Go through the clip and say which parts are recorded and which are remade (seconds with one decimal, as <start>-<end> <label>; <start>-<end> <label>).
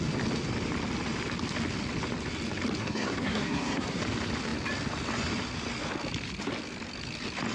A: 0.0-2.8 recorded; 2.8-4.0 remade; 4.0-7.5 recorded